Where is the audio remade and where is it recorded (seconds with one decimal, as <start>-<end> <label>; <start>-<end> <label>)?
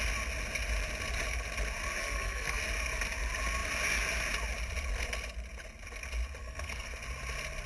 0.0-2.0 recorded; 2.0-2.6 remade; 2.6-6.4 recorded; 6.4-6.9 remade; 6.9-7.7 recorded